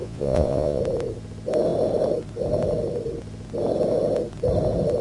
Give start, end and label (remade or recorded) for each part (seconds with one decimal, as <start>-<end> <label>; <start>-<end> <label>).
0.0-0.8 remade; 0.8-5.0 recorded